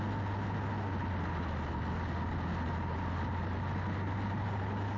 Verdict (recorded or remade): recorded